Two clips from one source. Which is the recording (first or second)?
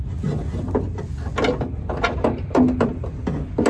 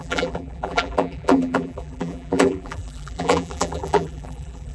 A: first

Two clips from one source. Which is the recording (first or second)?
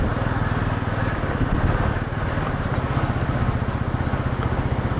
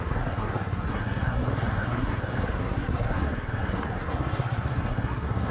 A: first